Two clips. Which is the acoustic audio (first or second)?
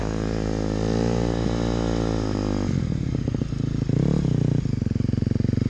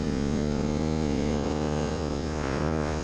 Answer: first